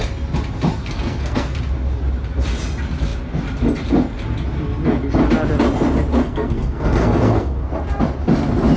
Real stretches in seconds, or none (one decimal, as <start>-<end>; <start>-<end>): 0.0-0.8; 1.6-6.1; 7.7-8.8